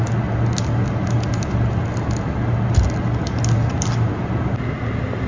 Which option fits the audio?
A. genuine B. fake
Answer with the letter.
A